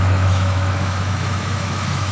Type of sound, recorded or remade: remade